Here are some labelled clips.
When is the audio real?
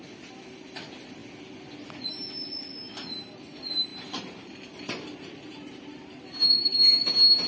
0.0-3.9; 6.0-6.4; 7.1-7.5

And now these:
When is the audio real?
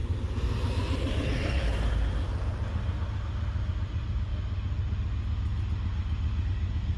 0.0-7.0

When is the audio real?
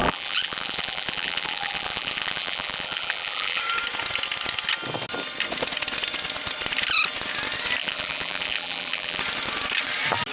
3.6-7.8; 9.2-10.3